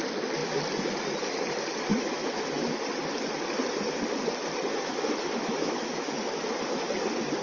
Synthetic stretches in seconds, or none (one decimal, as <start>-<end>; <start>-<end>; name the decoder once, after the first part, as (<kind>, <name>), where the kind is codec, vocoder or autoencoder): 1.9-2.7 (autoencoder, DAC-VAE); 4.7-6.9